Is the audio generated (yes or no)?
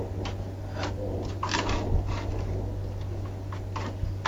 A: no